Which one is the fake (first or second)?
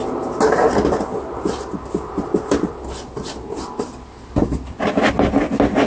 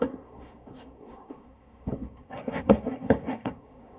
second